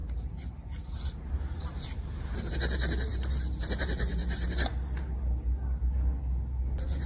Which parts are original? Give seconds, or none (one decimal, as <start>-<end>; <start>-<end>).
2.5-3.1; 3.8-7.1